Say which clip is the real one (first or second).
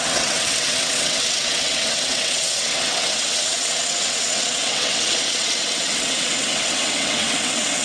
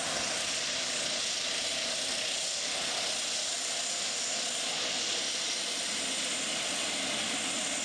second